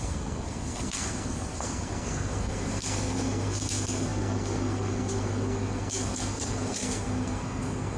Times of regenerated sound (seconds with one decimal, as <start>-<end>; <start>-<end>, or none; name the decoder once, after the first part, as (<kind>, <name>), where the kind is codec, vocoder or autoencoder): 0.0-8.0 (codec, SNAC)